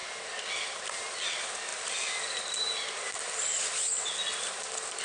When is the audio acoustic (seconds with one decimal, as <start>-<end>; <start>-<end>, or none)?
0.0-5.0